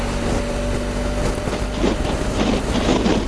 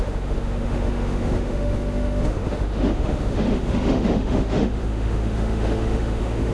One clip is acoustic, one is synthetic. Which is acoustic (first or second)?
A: first